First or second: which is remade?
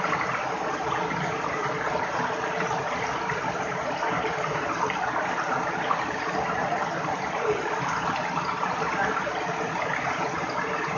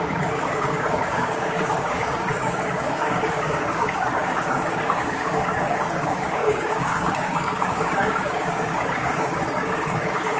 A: second